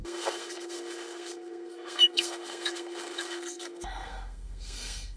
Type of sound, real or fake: fake